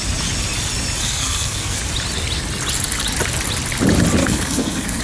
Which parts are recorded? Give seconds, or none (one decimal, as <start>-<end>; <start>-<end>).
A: 0.0-1.0; 1.8-4.2